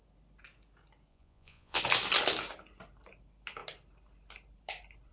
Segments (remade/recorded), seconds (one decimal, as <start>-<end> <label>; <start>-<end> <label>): 0.0-1.1 recorded; 1.1-1.8 remade; 1.8-5.1 recorded